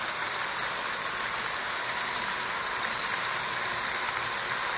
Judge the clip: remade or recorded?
recorded